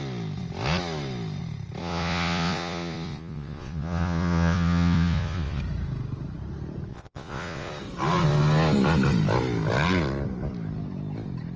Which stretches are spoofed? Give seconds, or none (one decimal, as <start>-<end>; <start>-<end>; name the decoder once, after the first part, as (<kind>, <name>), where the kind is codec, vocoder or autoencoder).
1.8-5.6 (vocoder, Vocos); 6.9-7.7